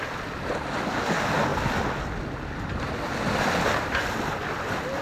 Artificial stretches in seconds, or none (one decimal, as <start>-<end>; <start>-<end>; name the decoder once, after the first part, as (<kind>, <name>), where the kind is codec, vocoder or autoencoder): none